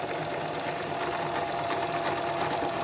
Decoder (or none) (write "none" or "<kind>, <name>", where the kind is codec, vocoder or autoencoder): none